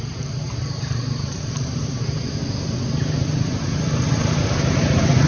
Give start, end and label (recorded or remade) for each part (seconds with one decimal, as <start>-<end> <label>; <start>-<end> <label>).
0.0-2.4 remade; 2.4-4.1 recorded; 4.1-5.3 remade